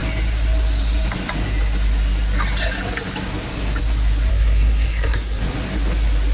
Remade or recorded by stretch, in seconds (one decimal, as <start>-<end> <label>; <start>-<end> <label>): 0.0-4.3 recorded; 4.3-5.4 remade; 5.4-6.3 recorded